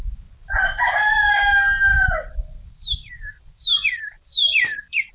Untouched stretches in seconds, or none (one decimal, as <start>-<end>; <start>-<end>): 0.0-0.4; 0.9-1.9